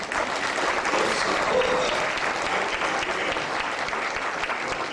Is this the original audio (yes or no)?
yes